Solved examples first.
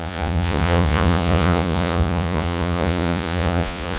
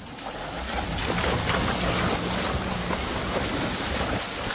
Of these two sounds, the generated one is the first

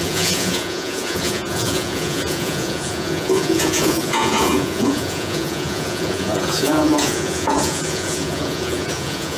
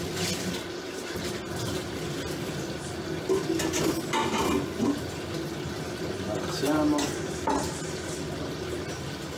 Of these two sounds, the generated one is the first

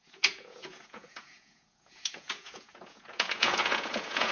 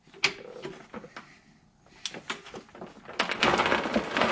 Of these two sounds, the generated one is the first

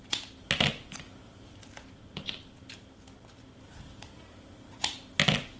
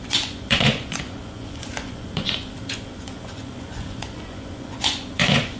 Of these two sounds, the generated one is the second